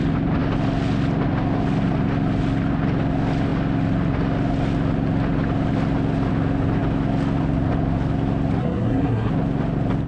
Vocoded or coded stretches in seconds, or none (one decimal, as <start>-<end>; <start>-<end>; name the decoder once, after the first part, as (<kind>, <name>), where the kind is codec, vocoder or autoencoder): 8.6-9.3 (codec, SNAC)